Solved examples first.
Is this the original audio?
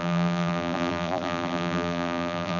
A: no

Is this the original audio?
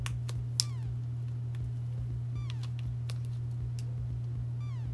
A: yes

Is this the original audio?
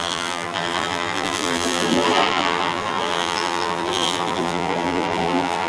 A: no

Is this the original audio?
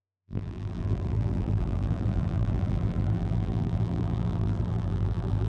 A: no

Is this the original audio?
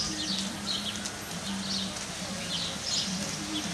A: yes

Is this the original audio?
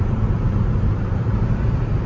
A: no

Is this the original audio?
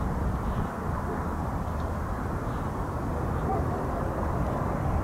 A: yes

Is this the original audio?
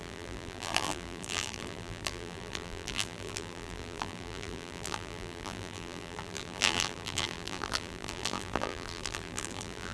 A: no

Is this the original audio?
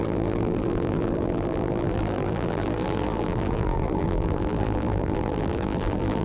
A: no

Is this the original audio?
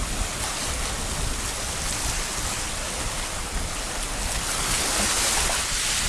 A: yes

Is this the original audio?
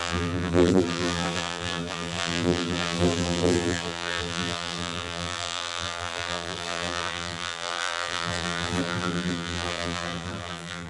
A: no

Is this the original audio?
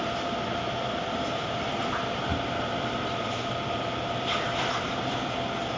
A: no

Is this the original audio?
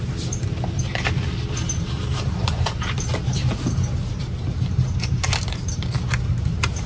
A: no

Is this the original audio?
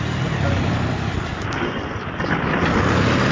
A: yes